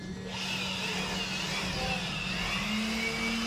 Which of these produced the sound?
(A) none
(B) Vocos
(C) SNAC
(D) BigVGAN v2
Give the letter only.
A